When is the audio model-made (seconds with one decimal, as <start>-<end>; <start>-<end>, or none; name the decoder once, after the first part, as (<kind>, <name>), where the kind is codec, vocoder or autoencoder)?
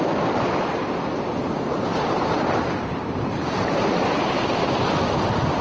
1.9-4.6 (vocoder, BigVGAN v2)